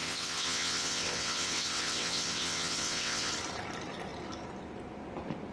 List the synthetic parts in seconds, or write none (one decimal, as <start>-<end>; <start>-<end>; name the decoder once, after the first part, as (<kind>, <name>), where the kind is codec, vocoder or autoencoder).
0.0-3.3 (vocoder, WaveNeXt)